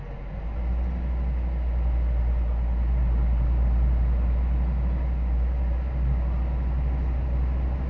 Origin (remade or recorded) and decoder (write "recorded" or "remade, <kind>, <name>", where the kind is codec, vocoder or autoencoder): recorded